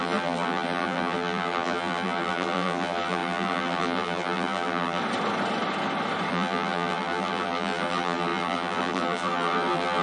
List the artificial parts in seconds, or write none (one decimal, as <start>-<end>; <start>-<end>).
0.0-5.0; 6.3-10.0